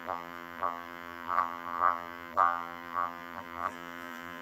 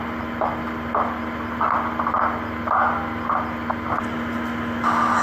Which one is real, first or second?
second